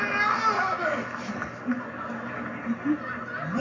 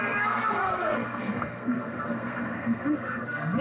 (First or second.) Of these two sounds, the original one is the first